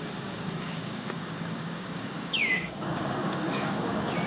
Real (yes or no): no